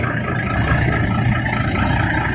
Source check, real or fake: real